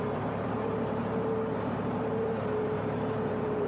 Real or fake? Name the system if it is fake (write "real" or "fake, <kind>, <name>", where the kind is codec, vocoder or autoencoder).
fake, vocoder, BigVGAN v2